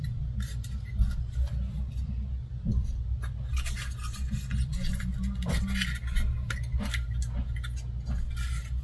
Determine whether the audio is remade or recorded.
recorded